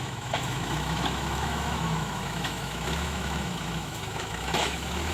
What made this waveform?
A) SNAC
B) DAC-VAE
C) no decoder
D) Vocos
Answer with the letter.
B